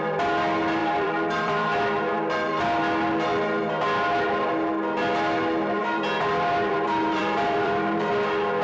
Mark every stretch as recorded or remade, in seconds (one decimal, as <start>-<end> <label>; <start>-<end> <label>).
0.0-0.8 recorded; 0.8-2.8 remade; 2.8-5.8 recorded; 5.8-8.1 remade; 8.1-8.6 recorded